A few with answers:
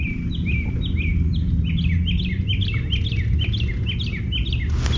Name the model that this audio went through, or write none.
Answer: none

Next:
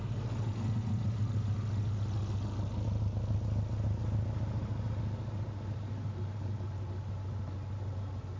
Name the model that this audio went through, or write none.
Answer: none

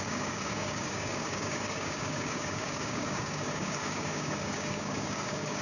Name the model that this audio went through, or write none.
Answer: codec, DAC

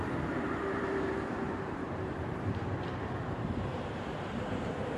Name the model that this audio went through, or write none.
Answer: vocoder, BigVGAN v2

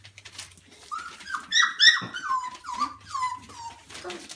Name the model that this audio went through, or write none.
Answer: none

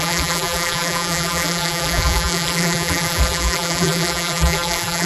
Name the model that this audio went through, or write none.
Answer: vocoder, BigVGAN v2